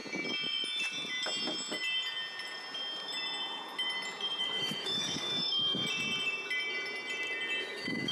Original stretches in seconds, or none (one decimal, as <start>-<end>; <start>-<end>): 0.0-4.4; 5.8-7.6